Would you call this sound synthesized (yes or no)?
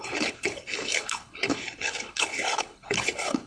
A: yes